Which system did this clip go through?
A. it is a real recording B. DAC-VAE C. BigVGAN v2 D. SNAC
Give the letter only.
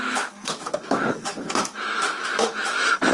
B